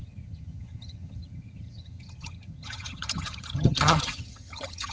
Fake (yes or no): yes